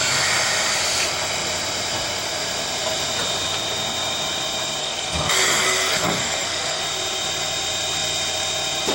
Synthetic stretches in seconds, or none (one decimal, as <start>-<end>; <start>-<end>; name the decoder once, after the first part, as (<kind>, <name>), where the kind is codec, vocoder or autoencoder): 4.8-6.8 (codec, SNAC)